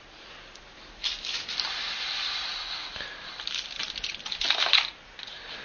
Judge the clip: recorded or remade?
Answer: recorded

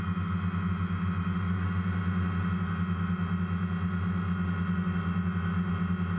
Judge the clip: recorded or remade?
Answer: recorded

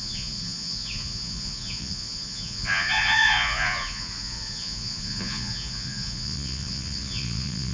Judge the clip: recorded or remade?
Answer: remade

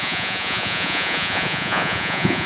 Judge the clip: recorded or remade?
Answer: remade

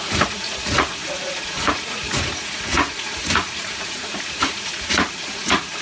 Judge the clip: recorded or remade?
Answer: remade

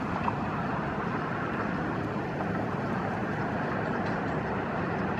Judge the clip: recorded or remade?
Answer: recorded